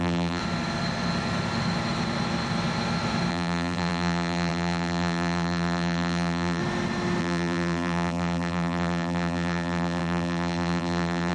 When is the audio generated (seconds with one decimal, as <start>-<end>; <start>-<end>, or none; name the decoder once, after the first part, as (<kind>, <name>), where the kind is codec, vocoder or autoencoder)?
0.0-0.4 (vocoder, BigVGAN v2); 3.3-6.6; 7.2-11.3